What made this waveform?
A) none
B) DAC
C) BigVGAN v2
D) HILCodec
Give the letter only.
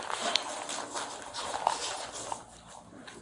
A